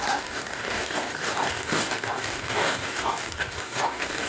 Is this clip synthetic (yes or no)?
yes